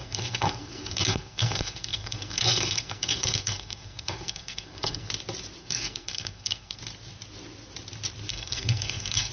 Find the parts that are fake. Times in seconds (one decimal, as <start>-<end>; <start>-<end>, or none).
0.0-5.1; 5.6-6.8; 8.3-9.3